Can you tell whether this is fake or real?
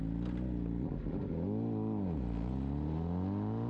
real